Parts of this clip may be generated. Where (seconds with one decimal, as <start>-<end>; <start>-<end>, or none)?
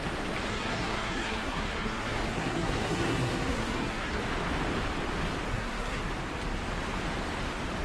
0.5-4.2; 5.5-6.0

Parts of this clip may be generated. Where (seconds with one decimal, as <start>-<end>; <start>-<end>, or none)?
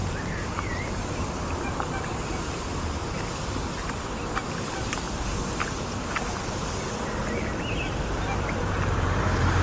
0.0-3.0; 8.0-9.6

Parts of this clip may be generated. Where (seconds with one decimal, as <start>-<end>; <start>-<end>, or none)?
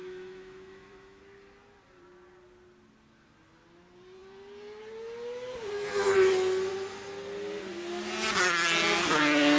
0.0-1.2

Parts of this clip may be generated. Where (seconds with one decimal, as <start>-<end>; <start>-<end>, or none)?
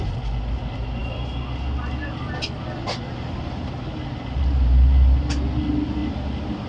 none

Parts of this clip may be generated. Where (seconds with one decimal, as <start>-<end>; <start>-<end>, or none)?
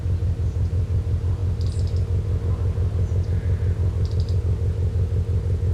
none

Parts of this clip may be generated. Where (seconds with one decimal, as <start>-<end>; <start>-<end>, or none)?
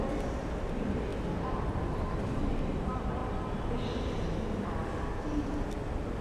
none